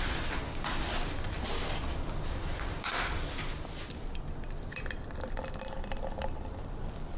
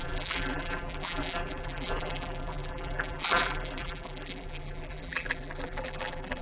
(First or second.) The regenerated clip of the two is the second